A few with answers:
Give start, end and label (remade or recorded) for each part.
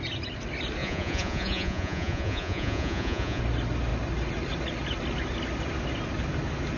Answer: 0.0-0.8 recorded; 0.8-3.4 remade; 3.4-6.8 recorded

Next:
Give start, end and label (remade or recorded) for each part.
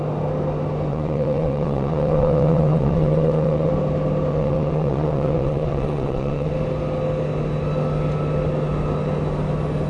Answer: 0.0-0.9 recorded; 0.9-3.7 remade; 3.7-4.3 recorded; 4.3-6.5 remade; 6.5-9.9 recorded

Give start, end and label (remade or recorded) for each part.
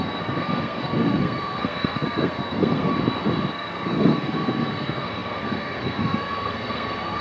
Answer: 0.0-2.9 remade; 2.9-3.5 recorded; 3.5-7.2 remade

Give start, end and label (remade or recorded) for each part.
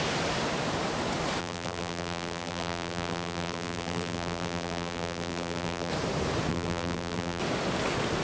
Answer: 0.0-1.4 recorded; 1.4-5.9 remade; 5.9-6.5 recorded; 6.5-7.4 remade; 7.4-8.2 recorded